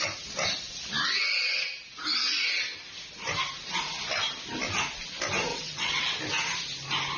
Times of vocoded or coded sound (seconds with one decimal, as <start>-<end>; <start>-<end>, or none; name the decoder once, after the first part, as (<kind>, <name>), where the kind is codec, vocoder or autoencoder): 5.5-6.2 (vocoder, WaveNeXt)